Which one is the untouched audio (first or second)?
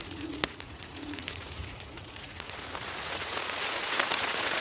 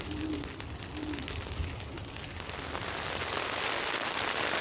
second